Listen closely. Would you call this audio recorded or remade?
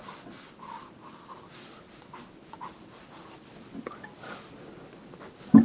recorded